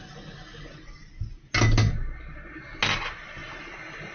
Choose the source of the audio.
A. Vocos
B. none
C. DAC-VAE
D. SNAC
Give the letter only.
B